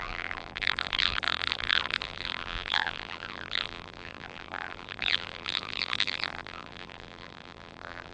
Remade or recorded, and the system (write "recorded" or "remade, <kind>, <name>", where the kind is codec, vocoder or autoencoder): remade, vocoder, BigVGAN v2